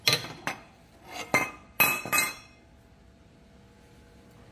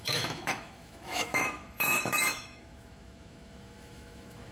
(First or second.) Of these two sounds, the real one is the first